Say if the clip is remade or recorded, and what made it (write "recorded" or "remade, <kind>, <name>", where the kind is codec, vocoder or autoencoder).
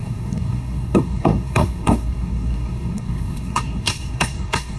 remade, codec, SNAC